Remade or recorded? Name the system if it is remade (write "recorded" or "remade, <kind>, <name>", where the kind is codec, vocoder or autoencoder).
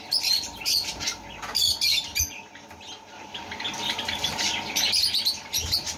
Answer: recorded